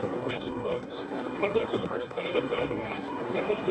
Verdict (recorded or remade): remade